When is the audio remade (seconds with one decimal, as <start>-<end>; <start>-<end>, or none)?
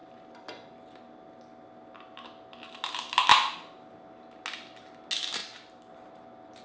none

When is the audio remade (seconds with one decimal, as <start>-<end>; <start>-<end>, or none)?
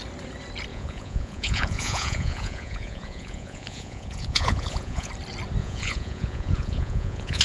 0.7-5.1; 5.6-7.4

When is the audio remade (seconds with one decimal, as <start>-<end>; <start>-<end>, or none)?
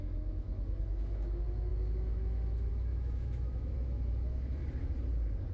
0.0-4.6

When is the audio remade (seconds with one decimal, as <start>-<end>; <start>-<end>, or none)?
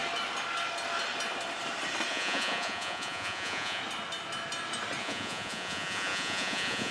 2.1-3.8; 5.0-6.9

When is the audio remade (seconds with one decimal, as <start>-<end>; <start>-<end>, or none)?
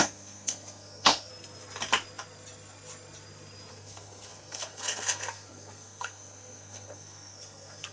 0.0-1.3; 3.7-7.9